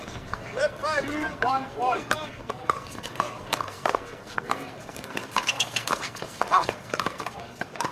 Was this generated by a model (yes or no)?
yes